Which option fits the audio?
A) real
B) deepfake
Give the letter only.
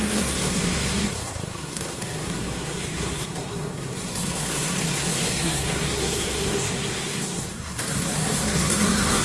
B